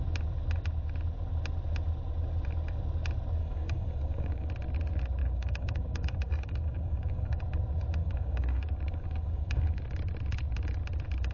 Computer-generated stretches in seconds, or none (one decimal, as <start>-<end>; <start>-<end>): 3.4-4.5; 5.2-7.4; 8.0-9.8